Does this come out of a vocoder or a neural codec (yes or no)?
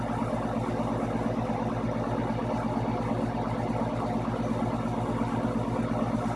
no